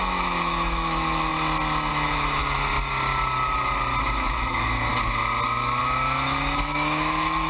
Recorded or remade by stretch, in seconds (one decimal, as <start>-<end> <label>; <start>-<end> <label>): 0.0-1.3 remade; 1.3-1.9 recorded; 1.9-2.4 remade; 2.4-4.0 recorded; 4.0-4.9 remade; 4.9-5.8 recorded; 5.8-7.5 remade

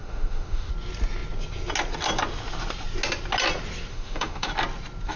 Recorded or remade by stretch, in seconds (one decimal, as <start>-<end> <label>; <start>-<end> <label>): 0.0-0.7 remade; 0.7-3.9 recorded; 3.9-4.5 remade; 4.5-5.2 recorded

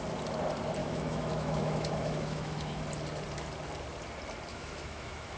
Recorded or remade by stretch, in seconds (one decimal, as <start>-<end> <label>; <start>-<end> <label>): 0.0-0.8 recorded; 0.8-2.8 remade; 2.8-4.5 recorded; 4.5-5.4 remade

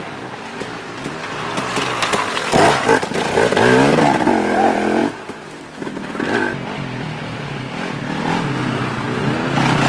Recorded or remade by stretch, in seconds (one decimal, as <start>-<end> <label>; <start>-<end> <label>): 0.0-9.9 recorded

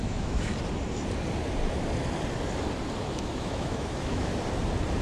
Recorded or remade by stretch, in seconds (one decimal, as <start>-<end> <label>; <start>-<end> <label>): 0.0-0.5 remade; 0.5-3.0 recorded; 3.0-4.3 remade; 4.3-5.0 recorded

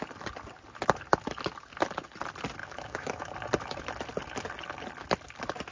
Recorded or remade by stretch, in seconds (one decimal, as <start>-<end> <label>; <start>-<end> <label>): 0.0-2.6 recorded; 2.6-3.3 remade; 3.3-5.7 recorded

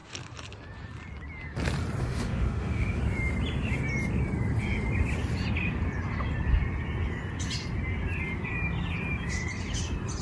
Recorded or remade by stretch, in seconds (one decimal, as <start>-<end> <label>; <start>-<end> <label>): 0.0-2.0 recorded; 2.0-3.0 remade; 3.0-10.2 recorded

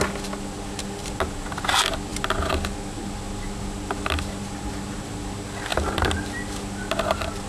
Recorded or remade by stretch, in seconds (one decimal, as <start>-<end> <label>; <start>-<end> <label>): 0.0-7.5 recorded